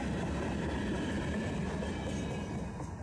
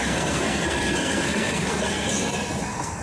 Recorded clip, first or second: first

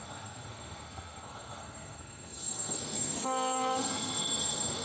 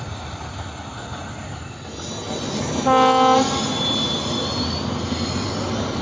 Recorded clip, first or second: second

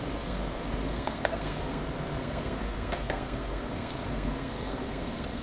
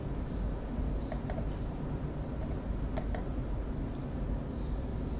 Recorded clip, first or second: second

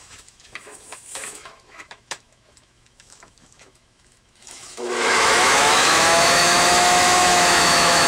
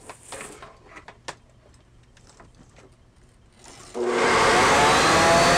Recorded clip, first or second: second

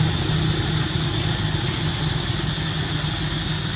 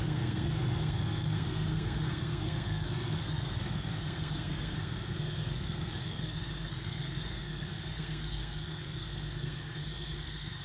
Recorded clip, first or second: first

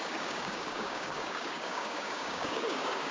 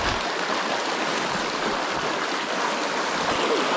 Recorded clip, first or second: second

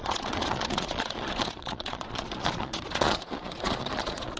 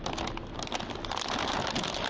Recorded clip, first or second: second